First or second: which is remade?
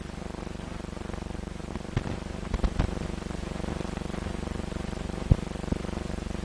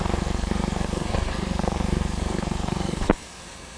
second